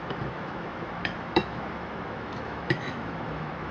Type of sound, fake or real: fake